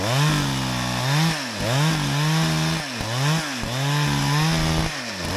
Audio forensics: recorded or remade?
recorded